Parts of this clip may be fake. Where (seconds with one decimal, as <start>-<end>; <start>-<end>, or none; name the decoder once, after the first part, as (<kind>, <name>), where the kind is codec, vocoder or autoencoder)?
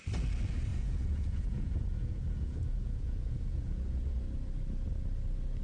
0.7-4.1 (vocoder, Vocos)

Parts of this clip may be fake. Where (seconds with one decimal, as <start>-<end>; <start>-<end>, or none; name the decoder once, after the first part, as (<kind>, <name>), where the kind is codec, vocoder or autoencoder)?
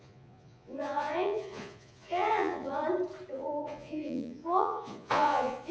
0.0-2.8 (vocoder, Vocos); 3.3-5.7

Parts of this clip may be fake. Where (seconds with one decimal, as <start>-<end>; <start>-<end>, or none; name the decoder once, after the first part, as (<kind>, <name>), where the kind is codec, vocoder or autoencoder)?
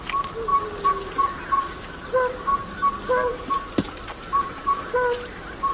4.3-4.9 (vocoder, Vocos)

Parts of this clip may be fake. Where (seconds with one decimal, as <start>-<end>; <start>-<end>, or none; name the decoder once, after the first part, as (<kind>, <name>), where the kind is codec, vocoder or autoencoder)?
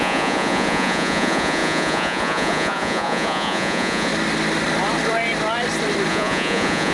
0.0-4.1 (vocoder, Vocos); 6.1-6.9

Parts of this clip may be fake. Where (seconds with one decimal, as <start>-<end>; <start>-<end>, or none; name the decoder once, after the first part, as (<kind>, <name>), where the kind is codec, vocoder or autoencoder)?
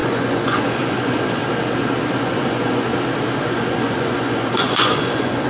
0.0-1.4 (vocoder, Vocos); 2.2-2.9; 3.4-5.5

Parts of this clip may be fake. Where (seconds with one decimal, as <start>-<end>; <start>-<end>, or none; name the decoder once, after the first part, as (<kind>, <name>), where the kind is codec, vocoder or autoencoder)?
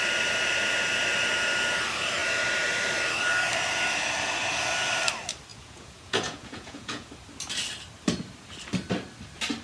5.5-7.1 (vocoder, Vocos)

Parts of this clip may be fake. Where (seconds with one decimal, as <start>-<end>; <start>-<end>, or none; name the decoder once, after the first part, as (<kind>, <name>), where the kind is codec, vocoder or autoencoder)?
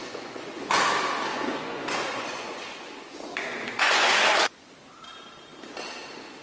0.0-0.8 (vocoder, Vocos); 1.3-4.7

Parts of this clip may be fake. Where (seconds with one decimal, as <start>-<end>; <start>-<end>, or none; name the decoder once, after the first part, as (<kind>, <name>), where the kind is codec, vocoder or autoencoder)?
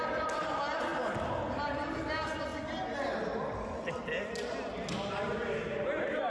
none